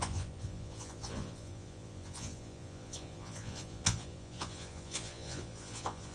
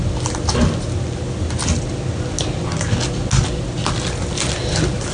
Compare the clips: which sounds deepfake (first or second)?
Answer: first